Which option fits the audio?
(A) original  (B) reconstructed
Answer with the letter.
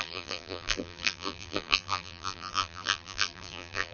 B